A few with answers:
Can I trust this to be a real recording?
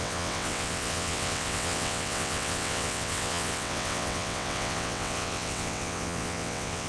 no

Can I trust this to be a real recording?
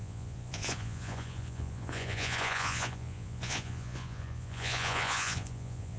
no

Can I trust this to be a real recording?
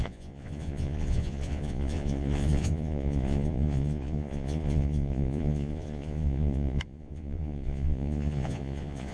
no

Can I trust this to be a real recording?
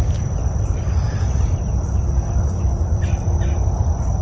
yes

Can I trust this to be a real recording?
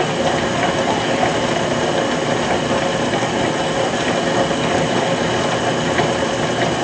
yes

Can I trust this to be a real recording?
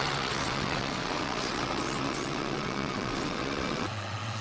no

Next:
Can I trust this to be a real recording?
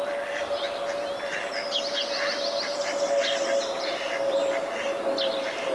yes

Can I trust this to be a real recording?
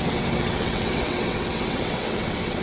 no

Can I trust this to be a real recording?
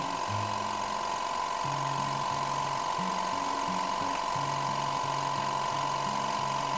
yes